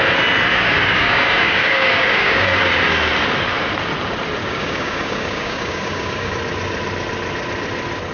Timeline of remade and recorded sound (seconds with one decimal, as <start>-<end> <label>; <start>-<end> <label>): 0.0-0.5 recorded; 0.5-2.6 remade; 2.6-4.4 recorded; 4.4-6.3 remade; 6.3-8.1 recorded